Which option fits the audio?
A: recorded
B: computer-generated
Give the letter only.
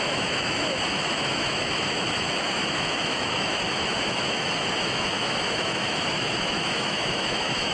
B